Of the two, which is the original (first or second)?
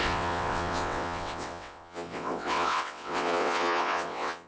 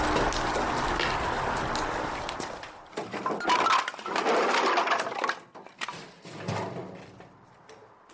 second